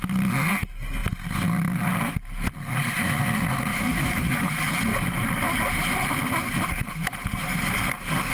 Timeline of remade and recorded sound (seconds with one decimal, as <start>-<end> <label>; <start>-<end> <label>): 0.0-3.7 recorded; 3.7-4.5 remade; 4.5-8.3 recorded